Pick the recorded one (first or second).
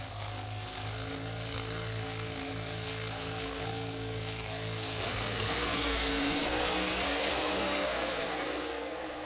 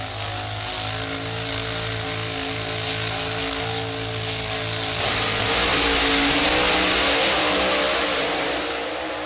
second